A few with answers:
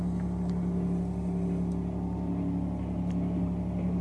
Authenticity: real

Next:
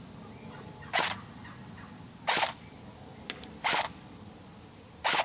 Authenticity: real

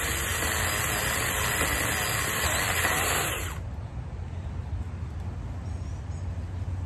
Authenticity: real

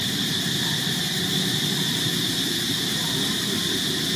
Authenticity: fake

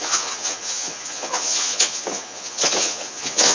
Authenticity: fake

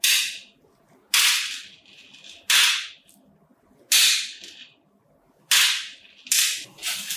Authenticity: real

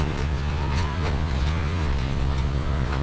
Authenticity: fake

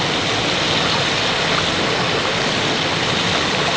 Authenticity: real